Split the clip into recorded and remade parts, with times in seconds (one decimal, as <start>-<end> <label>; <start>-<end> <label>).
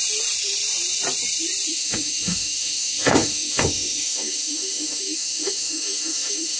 0.0-1.7 recorded; 1.7-6.6 remade